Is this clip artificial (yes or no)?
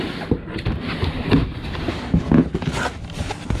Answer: no